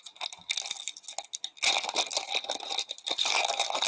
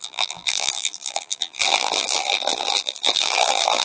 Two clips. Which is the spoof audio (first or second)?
second